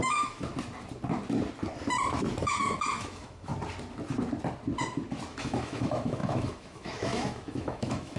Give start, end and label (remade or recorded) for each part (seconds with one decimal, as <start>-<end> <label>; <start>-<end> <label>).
0.0-0.5 remade; 0.5-2.4 recorded; 2.4-3.5 remade; 3.5-5.3 recorded; 5.3-8.2 remade